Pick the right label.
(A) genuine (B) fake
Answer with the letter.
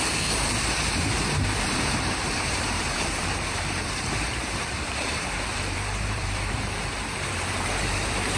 B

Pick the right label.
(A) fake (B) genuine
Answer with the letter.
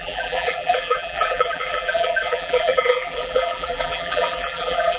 A